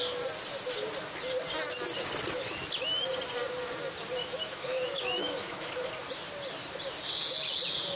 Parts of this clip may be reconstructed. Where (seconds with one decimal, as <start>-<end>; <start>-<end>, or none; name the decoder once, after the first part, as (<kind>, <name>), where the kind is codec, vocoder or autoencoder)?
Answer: 4.2-5.9 (autoencoder, DAC-VAE)